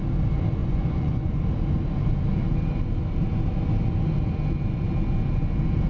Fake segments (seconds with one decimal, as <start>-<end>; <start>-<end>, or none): 0.6-1.4